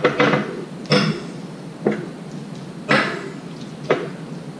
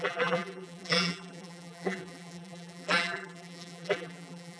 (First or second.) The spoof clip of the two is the second